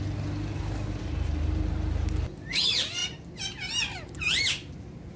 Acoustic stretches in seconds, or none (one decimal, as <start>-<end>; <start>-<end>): 0.0-5.2